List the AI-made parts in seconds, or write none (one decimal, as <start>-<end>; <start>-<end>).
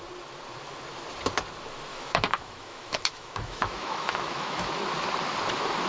1.9-4.7